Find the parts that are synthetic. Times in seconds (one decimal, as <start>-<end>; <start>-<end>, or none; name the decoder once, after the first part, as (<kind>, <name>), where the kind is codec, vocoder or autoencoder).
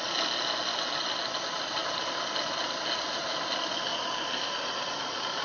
none